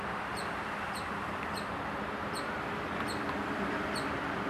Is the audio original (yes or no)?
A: no